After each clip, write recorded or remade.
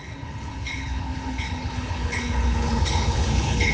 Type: remade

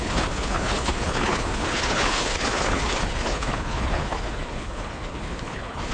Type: remade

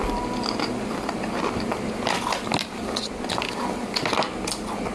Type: recorded